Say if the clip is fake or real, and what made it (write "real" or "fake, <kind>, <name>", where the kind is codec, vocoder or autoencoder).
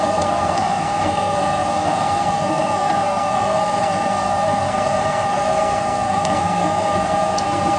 fake, codec, SNAC